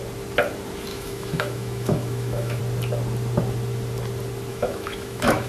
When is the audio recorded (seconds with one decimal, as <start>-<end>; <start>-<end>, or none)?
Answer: 0.0-0.9; 2.6-4.5